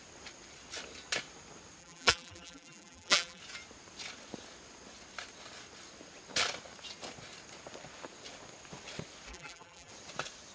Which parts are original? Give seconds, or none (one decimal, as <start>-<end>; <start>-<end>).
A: 0.0-1.8; 3.4-9.3; 9.9-10.5